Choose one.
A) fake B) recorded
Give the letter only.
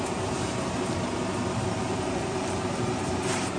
A